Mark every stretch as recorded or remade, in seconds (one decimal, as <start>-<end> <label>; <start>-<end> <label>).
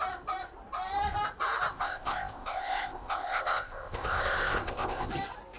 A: 0.0-1.7 recorded; 1.7-5.1 remade; 5.1-5.6 recorded